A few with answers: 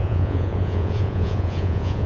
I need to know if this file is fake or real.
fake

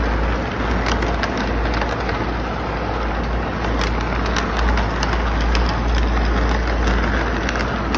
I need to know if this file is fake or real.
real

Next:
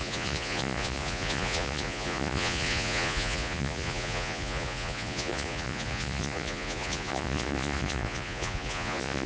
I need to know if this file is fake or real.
fake